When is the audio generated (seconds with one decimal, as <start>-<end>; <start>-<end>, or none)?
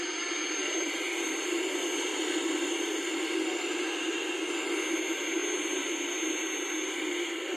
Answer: 0.6-1.7; 2.1-2.9; 5.4-6.1